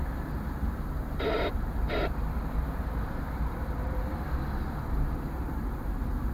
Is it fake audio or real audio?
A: fake